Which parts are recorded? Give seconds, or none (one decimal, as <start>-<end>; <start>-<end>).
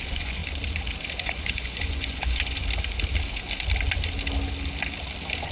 0.4-1.2; 2.6-5.5